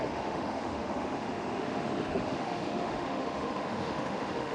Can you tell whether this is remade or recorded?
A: remade